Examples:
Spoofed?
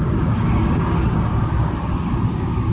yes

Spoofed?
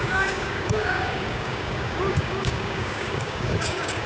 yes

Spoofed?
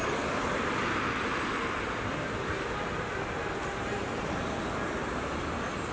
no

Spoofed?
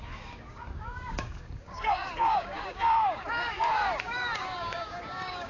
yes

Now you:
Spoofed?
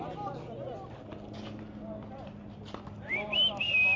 no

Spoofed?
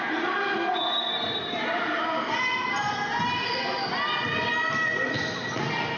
no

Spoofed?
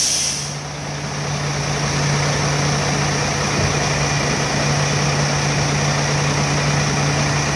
no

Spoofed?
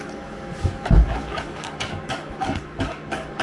yes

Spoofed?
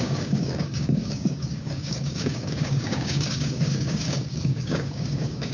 yes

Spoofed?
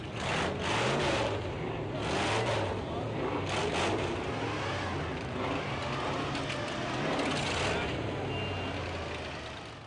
no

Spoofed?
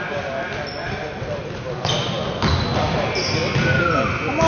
no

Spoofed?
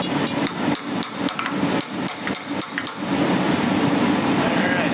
no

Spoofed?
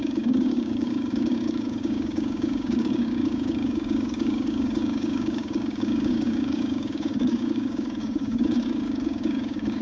yes